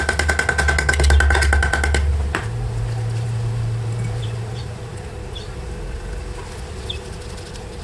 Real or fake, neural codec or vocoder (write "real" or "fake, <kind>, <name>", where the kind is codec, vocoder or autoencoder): real